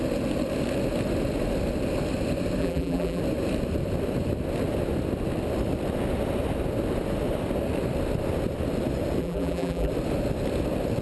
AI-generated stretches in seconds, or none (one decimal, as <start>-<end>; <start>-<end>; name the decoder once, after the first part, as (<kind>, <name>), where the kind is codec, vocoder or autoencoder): 2.6-3.2 (vocoder, BigVGAN v2); 9.2-9.9

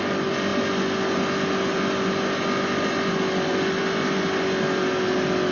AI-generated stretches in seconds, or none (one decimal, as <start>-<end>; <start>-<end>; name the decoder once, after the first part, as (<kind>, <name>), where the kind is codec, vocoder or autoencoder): none

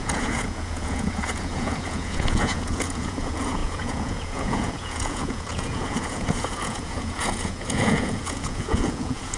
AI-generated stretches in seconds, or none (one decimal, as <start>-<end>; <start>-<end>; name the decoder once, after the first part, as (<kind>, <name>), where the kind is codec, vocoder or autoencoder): 0.0-9.4 (vocoder, Vocos)